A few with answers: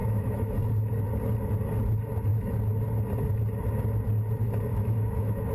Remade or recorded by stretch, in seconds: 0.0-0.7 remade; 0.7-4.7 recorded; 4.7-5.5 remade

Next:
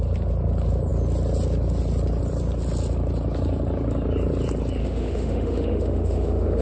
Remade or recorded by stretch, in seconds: 0.0-4.8 recorded; 4.8-6.6 remade

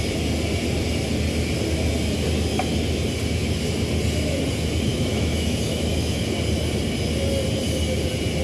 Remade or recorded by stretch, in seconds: 0.0-4.9 recorded; 4.9-6.2 remade; 6.2-8.4 recorded

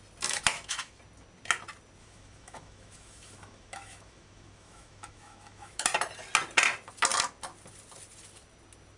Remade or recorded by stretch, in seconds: 0.0-0.5 recorded; 0.5-1.0 remade; 1.0-2.0 recorded; 2.0-5.9 remade; 5.9-9.0 recorded

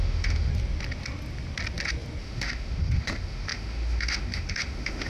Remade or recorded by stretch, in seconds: 0.0-0.5 remade; 0.5-2.2 recorded; 2.2-5.1 remade

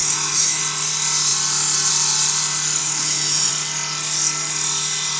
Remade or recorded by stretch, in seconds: 0.0-0.6 remade; 0.6-2.8 recorded; 2.8-3.5 remade; 3.5-5.2 recorded